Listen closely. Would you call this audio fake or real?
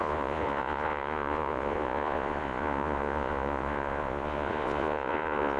fake